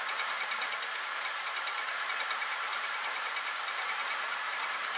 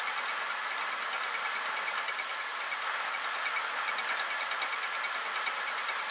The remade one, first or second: first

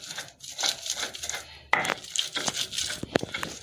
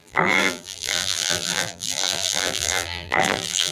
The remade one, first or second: second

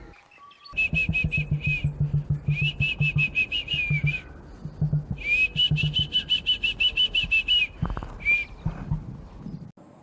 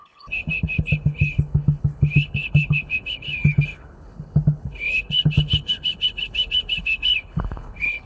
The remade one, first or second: second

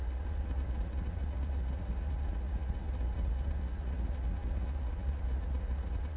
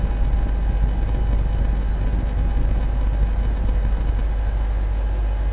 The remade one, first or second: first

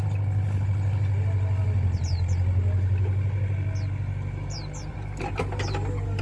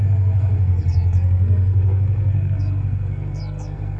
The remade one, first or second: second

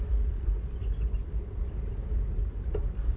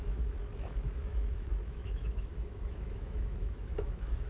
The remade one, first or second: second